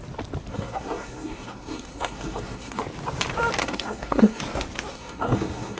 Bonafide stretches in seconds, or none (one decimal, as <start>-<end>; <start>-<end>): 0.0-0.5; 2.8-3.6; 4.4-4.9